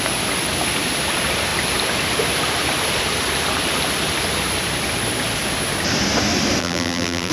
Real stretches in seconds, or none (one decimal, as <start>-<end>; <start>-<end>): 0.0-6.6